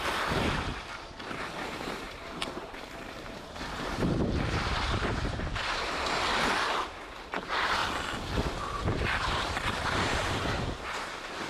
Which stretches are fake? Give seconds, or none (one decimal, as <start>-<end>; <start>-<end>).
0.0-7.8; 8.7-11.5